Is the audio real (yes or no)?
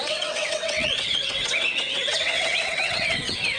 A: no